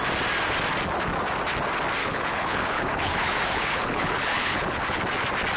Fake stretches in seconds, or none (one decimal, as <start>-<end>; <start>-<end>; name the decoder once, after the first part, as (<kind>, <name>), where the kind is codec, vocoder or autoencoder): 2.0-5.0 (codec, HILCodec)